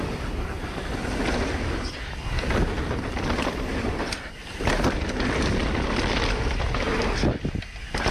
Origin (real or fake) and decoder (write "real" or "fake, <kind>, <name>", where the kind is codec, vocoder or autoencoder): real